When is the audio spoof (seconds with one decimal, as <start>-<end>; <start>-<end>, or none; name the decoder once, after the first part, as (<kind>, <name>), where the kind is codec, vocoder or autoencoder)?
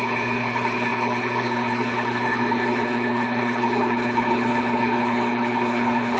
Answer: 0.0-6.2 (codec, HILCodec)